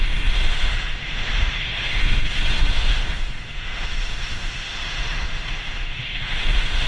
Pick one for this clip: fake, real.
fake